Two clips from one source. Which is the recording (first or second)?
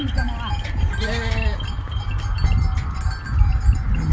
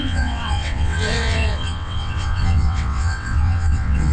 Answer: first